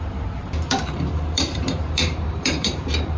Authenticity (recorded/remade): remade